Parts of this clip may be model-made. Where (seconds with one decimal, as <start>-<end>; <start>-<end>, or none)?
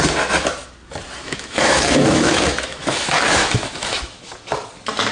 1.2-4.3